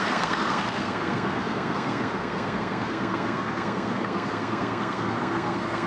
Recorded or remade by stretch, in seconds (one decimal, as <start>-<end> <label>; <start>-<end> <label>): 0.0-5.9 remade